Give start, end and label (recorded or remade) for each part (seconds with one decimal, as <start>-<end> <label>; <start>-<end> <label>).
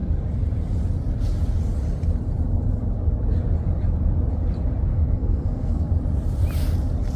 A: 0.0-4.9 recorded; 4.9-5.9 remade; 5.9-7.2 recorded